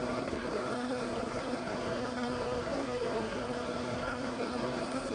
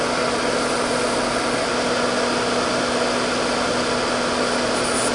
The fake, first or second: first